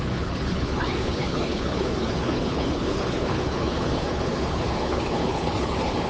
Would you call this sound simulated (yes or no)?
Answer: yes